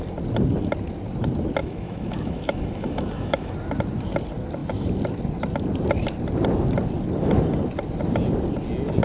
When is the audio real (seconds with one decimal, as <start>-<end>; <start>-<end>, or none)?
0.0-1.6; 3.5-9.0